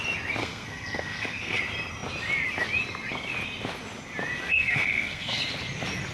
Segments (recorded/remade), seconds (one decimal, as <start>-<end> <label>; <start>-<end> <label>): 0.0-0.4 recorded; 0.4-1.6 remade; 1.6-4.5 recorded; 4.5-5.4 remade; 5.4-6.1 recorded